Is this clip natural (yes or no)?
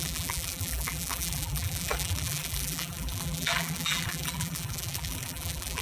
no